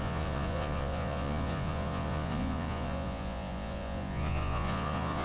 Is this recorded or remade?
remade